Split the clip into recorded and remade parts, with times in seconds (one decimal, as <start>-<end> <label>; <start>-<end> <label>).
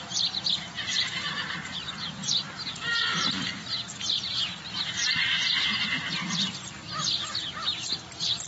0.0-8.5 recorded